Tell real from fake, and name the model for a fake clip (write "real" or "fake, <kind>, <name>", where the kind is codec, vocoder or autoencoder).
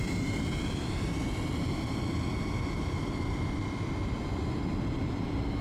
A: fake, vocoder, BigVGAN v2